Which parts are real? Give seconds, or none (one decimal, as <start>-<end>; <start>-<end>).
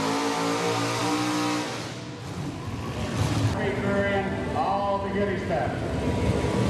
0.0-6.7